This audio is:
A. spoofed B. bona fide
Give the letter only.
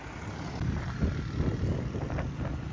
B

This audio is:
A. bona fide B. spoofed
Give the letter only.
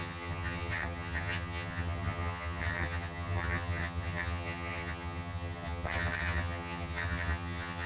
B